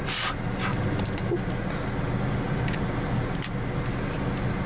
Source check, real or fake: real